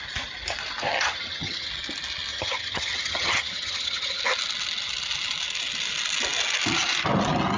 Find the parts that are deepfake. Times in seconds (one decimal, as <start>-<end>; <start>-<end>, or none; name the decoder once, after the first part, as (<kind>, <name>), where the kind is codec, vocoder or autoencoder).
0.9-1.7 (vocoder, HiFi-GAN); 2.3-4.2